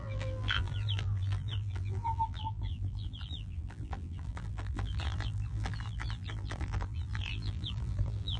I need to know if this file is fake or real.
fake